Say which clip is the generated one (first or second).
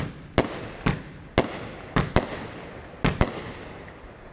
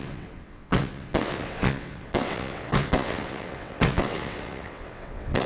second